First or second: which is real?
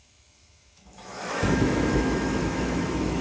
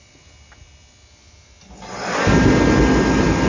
second